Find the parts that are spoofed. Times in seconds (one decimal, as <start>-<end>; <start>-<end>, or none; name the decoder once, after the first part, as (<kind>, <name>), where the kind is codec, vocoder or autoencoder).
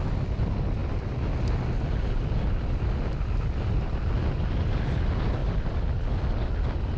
none